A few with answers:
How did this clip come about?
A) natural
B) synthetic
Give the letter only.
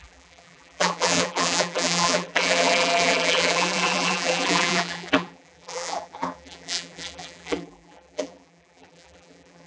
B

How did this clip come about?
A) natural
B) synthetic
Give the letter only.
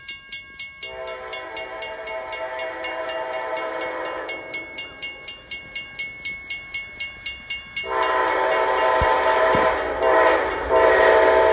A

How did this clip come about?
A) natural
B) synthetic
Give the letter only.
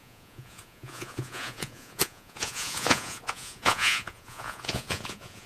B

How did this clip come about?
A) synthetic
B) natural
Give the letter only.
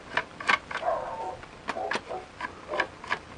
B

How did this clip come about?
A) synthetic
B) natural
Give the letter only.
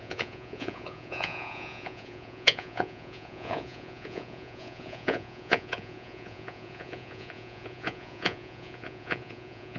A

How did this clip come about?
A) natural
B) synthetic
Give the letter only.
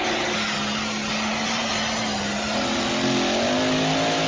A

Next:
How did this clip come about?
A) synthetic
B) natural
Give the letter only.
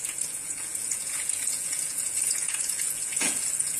A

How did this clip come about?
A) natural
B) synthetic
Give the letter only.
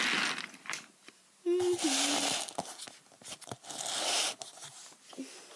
A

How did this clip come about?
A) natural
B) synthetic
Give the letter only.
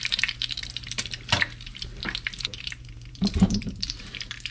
B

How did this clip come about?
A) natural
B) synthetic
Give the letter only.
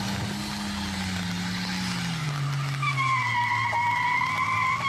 A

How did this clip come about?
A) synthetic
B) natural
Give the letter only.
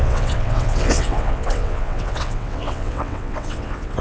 A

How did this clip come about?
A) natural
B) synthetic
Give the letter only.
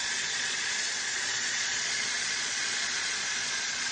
B